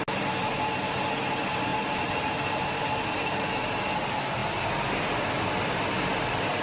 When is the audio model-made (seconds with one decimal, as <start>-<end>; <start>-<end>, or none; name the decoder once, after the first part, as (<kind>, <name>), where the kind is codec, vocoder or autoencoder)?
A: 1.7-3.4 (vocoder, BigVGAN v2)